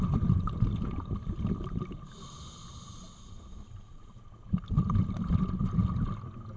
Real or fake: real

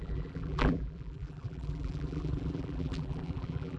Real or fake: fake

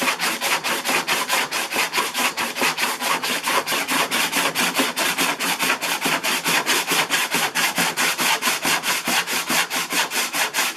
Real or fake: fake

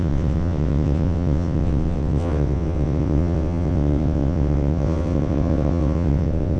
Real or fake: fake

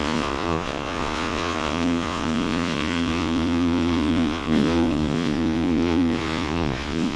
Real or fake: fake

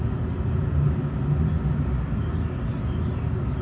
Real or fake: real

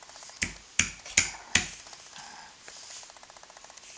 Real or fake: real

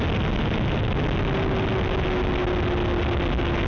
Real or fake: real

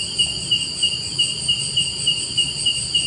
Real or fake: real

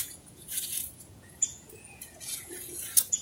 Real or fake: fake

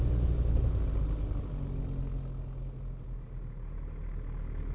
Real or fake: real